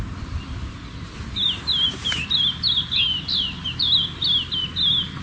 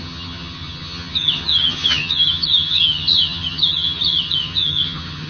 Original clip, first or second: first